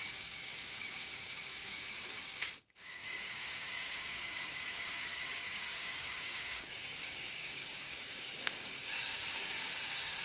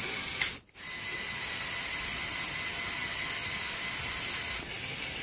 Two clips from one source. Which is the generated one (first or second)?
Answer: first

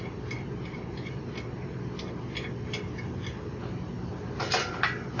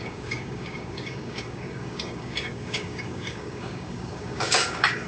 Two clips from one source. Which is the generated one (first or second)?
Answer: second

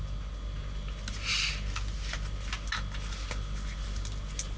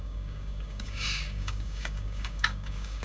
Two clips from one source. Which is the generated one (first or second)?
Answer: second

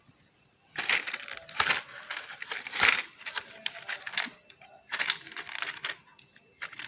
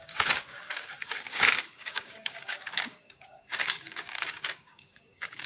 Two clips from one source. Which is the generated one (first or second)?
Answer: second